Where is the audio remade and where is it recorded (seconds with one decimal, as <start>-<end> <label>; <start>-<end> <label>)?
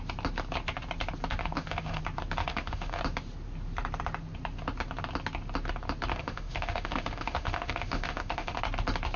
0.0-1.4 recorded; 1.4-2.0 remade; 2.0-2.4 recorded; 2.4-3.0 remade; 3.0-6.1 recorded; 6.1-8.6 remade; 8.6-9.2 recorded